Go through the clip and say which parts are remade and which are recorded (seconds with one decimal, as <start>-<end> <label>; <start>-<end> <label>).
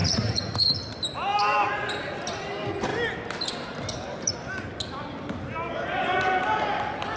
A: 0.0-0.6 remade; 0.6-7.2 recorded